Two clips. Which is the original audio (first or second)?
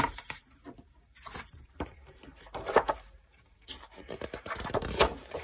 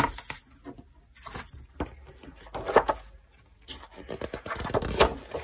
second